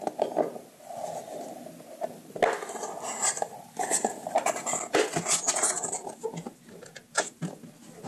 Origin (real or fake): fake